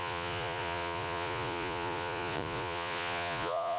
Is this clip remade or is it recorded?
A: remade